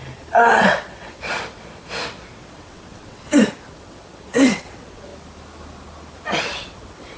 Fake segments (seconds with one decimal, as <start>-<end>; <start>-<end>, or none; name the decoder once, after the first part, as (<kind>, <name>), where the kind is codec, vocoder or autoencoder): 0.5-3.2 (vocoder, WaveNeXt); 3.7-5.1; 6.4-7.2